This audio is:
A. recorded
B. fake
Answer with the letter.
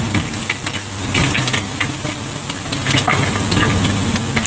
A